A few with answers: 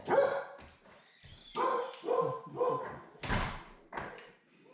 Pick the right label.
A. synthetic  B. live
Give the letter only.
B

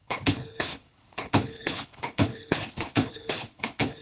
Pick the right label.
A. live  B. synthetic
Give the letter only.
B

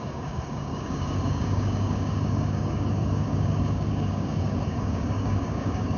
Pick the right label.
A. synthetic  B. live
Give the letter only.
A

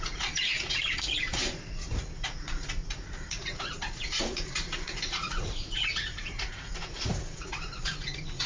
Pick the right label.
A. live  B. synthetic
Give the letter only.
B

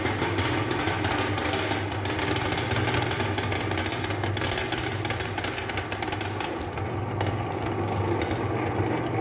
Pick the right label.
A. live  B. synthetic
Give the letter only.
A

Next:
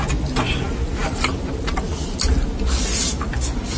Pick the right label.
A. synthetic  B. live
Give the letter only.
B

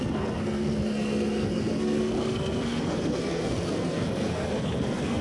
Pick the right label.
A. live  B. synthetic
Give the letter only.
B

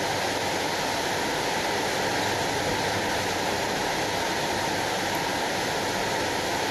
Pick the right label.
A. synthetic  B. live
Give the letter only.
B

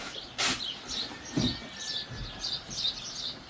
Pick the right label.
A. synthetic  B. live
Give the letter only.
B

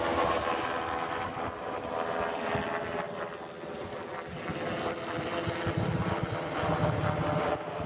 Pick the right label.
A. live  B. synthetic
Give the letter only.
A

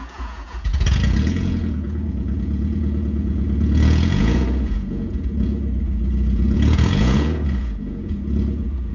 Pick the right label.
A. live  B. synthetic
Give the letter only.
B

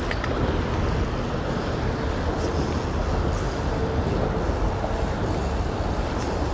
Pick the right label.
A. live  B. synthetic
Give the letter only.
A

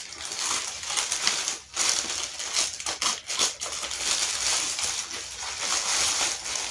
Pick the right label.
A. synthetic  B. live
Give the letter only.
B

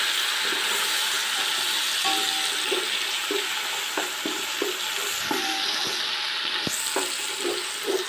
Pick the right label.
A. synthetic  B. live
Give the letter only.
B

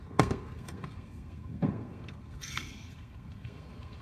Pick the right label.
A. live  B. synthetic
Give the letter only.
B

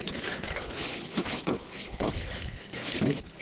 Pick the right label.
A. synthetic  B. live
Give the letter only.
A